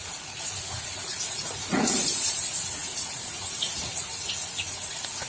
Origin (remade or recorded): remade